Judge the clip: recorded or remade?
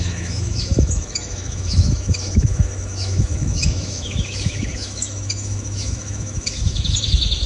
remade